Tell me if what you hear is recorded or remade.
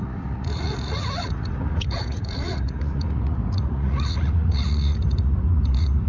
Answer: remade